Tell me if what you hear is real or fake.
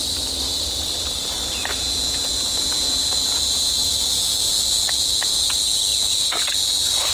real